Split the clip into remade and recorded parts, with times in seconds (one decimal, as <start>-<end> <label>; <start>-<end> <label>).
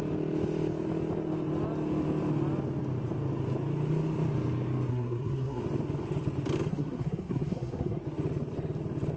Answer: 0.0-4.9 recorded; 4.9-5.6 remade; 5.6-6.7 recorded; 6.7-8.0 remade; 8.0-9.2 recorded